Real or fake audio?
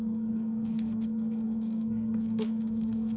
fake